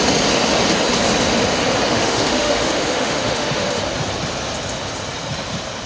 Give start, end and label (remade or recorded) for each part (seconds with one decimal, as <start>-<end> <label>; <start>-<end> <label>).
0.0-1.9 recorded; 1.9-3.8 remade; 3.8-5.9 recorded